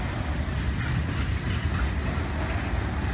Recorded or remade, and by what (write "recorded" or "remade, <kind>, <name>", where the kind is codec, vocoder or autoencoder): recorded